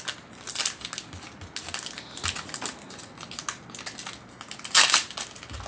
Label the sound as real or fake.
real